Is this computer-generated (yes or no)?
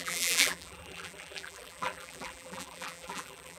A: yes